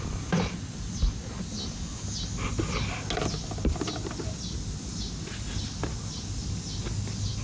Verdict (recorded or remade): recorded